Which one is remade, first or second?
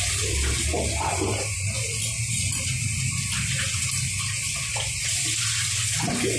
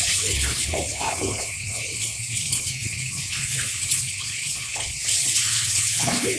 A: second